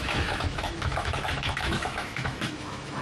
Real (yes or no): no